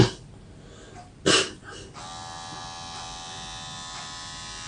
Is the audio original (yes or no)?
yes